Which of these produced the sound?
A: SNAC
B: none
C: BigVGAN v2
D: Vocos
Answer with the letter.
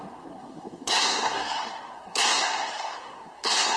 A